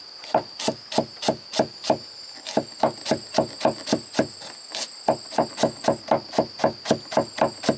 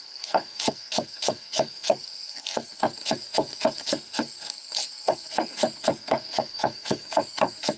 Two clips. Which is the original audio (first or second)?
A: first